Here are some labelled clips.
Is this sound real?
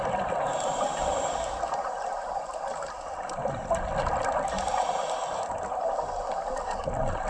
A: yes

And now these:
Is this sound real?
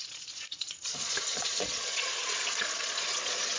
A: no